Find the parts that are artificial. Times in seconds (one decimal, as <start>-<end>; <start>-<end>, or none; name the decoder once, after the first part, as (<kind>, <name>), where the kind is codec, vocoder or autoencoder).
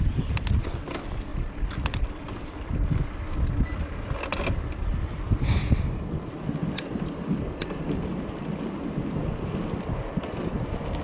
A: none